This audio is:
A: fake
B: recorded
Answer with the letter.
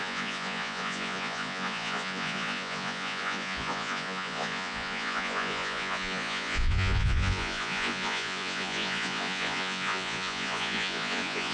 A